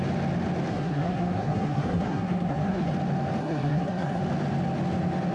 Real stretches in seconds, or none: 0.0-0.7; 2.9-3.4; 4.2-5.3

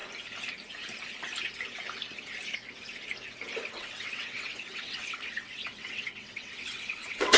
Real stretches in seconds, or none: 0.0-3.7

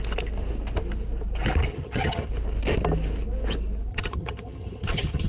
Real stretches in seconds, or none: 0.0-1.7; 2.3-3.9

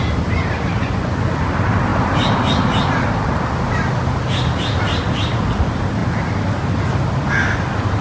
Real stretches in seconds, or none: 0.0-0.8; 1.4-8.0

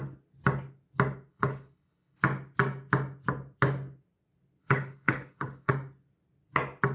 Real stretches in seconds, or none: 0.0-1.3; 2.2-4.6; 5.7-6.9

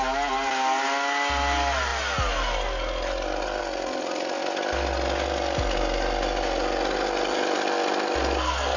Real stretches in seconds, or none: 0.0-8.8

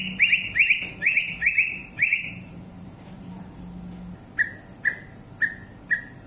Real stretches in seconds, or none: 0.0-1.8; 3.6-6.3

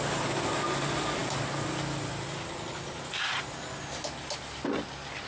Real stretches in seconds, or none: 0.0-5.3